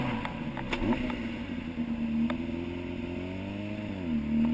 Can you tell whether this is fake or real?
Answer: real